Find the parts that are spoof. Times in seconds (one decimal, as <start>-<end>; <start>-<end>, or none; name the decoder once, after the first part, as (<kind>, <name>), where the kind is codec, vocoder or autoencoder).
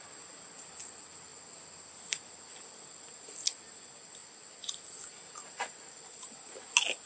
none